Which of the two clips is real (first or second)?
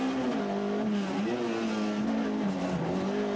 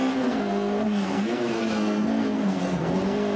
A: first